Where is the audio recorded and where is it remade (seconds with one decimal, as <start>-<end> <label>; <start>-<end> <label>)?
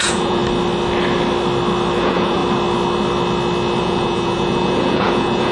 0.0-0.4 remade; 0.4-2.0 recorded; 2.0-2.4 remade; 2.4-3.8 recorded; 3.8-5.5 remade